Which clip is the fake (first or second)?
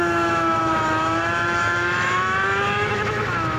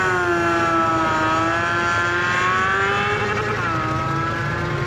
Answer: first